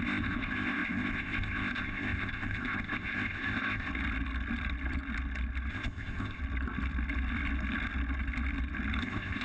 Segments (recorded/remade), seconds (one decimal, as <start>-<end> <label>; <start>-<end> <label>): 0.0-3.9 remade; 3.9-5.7 recorded; 5.7-6.4 remade; 6.4-9.0 recorded; 9.0-9.4 remade

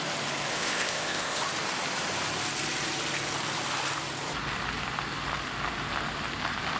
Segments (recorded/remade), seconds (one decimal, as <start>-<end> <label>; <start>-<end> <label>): 0.0-0.5 recorded; 0.5-1.4 remade; 1.4-6.8 recorded

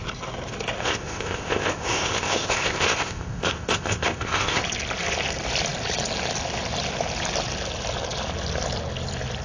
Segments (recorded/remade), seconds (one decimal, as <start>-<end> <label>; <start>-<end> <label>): 0.0-0.8 recorded; 0.8-4.6 remade; 4.6-9.4 recorded

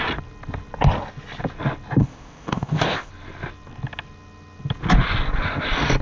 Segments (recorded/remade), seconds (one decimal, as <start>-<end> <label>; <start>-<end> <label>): 0.0-2.0 recorded; 2.0-3.1 remade; 3.1-6.0 recorded

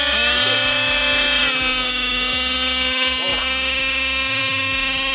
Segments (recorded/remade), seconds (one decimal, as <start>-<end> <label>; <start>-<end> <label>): 0.0-5.1 recorded

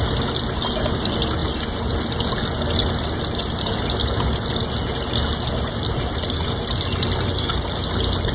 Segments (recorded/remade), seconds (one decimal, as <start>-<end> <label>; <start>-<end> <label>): 0.0-8.3 recorded

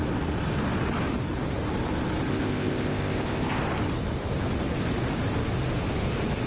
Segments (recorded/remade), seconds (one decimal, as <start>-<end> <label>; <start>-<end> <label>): 0.0-2.3 recorded; 2.3-3.6 remade; 3.6-6.5 recorded

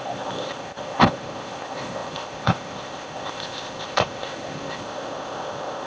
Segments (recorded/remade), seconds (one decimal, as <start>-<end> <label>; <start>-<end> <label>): 0.0-5.9 remade